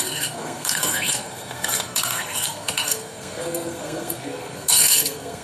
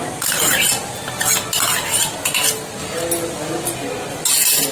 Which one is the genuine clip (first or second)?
second